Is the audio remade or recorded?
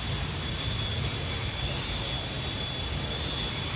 recorded